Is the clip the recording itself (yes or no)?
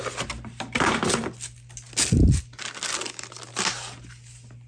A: yes